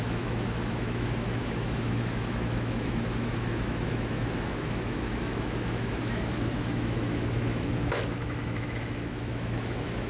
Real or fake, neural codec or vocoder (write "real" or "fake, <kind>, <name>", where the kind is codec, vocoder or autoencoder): fake, autoencoder, DAC-VAE